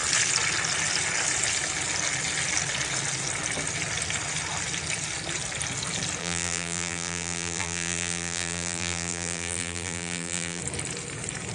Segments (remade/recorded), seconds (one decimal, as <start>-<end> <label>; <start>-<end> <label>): 0.0-6.2 recorded; 6.2-10.6 remade; 10.6-11.5 recorded